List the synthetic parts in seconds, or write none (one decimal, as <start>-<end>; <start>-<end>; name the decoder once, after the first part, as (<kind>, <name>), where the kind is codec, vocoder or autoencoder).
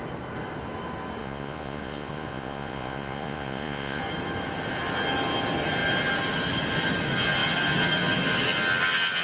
1.2-4.0 (vocoder, Vocos)